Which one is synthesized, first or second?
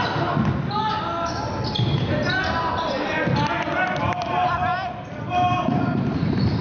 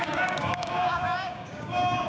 second